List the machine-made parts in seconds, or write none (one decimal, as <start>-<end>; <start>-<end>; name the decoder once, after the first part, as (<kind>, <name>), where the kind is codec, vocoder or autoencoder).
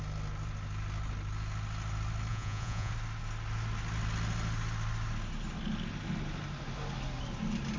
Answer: 2.3-2.9 (vocoder, Vocos)